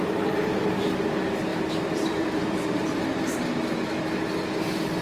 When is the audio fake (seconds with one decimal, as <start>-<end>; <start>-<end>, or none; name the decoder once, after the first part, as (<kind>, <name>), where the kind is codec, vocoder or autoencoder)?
none